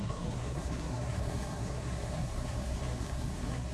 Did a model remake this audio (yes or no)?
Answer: yes